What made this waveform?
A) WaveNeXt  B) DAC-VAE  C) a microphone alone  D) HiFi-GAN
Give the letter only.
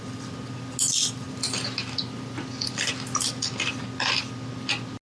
C